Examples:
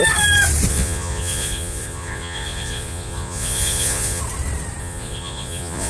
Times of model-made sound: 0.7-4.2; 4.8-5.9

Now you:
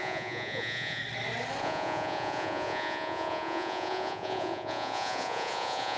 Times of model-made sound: 0.0-1.0; 1.6-6.0

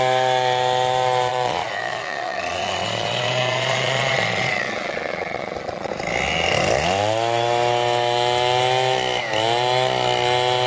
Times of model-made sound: 1.3-5.9

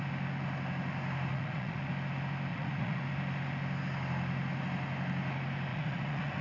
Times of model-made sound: 1.3-1.9; 2.5-3.0; 5.7-6.4

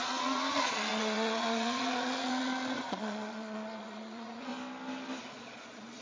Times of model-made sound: 0.0-4.5; 5.3-6.0

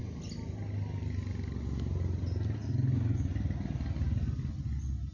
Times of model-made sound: none

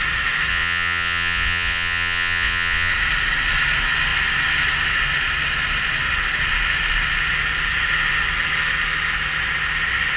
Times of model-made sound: 0.5-2.9